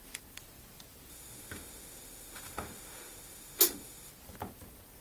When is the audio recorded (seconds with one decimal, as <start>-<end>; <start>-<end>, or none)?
0.0-1.1; 4.1-5.0